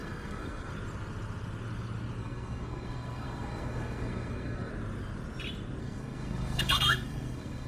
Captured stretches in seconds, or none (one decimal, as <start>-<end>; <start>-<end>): 0.7-2.2; 4.7-5.8